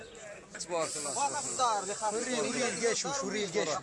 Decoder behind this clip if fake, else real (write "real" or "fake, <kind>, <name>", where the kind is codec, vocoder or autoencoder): real